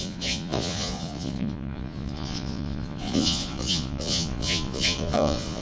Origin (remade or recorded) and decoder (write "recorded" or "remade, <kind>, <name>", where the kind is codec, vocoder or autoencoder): remade, vocoder, Vocos